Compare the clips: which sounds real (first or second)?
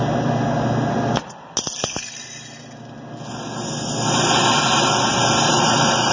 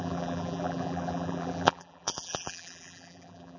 first